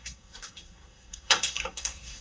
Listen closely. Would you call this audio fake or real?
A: fake